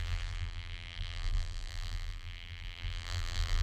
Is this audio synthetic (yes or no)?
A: yes